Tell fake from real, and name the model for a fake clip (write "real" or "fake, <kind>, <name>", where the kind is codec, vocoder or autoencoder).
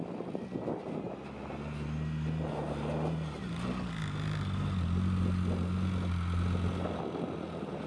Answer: real